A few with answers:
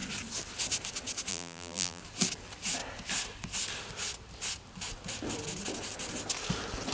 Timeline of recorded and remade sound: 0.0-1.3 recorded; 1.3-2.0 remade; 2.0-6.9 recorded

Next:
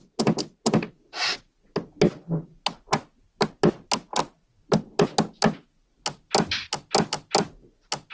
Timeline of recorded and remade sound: 0.0-8.1 recorded

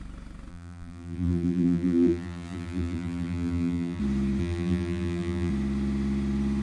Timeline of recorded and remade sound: 0.0-0.5 recorded; 0.5-4.0 remade; 4.0-4.4 recorded; 4.4-5.5 remade; 5.5-6.6 recorded

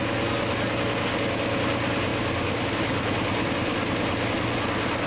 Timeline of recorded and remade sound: 0.0-2.1 recorded; 2.1-2.7 remade; 2.7-5.1 recorded

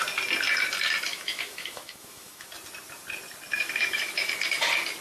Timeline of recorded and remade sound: 0.0-1.1 recorded; 1.1-2.5 remade; 2.5-3.5 recorded; 3.5-4.3 remade; 4.3-5.0 recorded

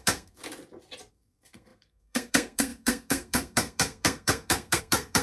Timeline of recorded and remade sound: 0.0-0.4 remade; 0.4-1.1 recorded; 1.1-5.2 remade

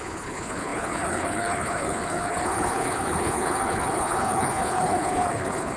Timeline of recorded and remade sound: 0.0-5.8 remade